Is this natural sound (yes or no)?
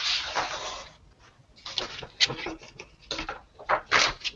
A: yes